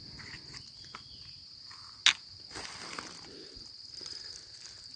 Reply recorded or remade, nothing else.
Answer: recorded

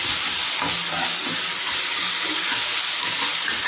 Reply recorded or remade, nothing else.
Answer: recorded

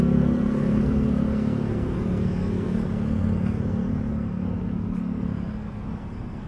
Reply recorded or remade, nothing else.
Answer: remade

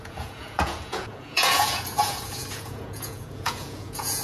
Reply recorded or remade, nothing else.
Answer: remade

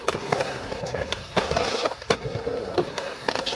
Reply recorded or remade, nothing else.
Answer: remade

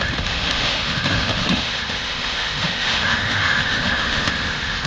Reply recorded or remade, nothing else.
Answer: remade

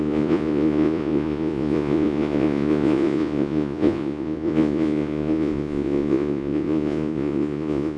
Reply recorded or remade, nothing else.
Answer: remade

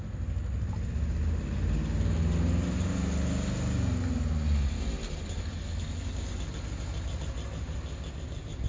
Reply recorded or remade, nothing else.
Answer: recorded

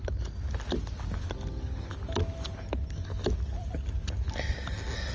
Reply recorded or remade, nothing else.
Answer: recorded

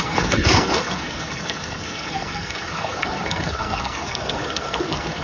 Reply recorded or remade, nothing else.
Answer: remade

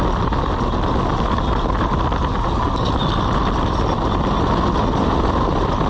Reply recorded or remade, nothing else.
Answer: recorded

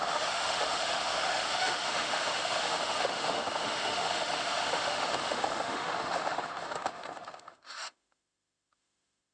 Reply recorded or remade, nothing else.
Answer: remade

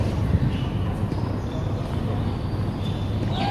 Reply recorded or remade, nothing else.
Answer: recorded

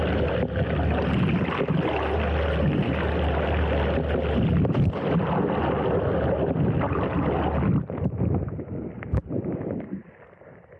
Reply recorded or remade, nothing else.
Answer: recorded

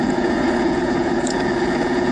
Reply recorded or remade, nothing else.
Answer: remade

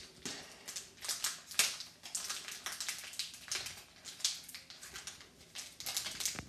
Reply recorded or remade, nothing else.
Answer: recorded